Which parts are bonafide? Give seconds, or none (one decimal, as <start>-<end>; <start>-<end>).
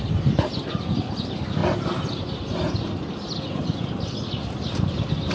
0.0-5.3